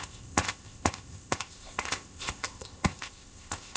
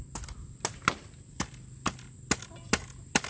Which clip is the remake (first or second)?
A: first